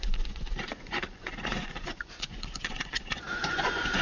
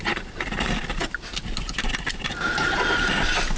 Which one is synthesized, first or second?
first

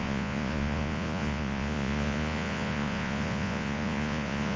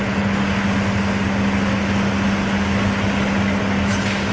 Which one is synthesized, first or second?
first